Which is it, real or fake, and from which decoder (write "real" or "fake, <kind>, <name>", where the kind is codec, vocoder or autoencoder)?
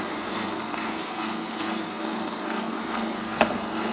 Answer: fake, codec, SNAC